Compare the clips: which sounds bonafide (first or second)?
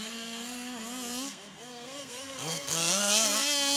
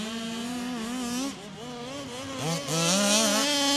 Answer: second